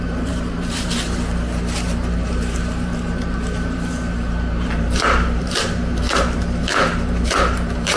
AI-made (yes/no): yes